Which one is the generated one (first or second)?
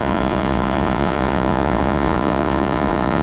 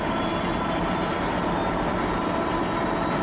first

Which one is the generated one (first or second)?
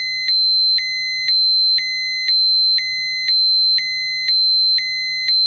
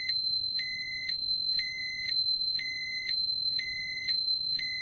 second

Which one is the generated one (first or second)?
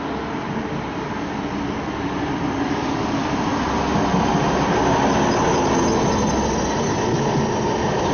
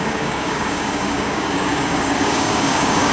second